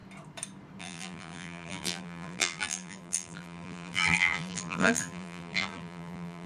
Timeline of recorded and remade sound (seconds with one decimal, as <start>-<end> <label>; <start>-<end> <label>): 0.0-0.8 recorded; 0.8-6.5 remade